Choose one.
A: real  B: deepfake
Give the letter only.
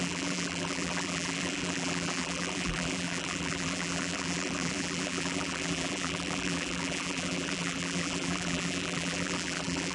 B